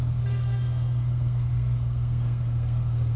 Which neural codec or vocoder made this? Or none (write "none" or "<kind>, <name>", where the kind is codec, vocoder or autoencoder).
codec, SNAC